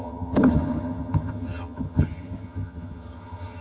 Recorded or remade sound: remade